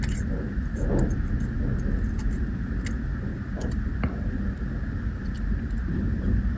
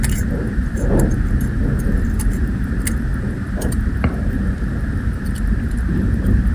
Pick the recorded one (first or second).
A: first